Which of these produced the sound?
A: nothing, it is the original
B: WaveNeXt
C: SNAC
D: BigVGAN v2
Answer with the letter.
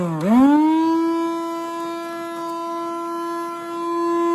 A